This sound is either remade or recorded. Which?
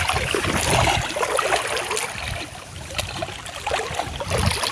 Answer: recorded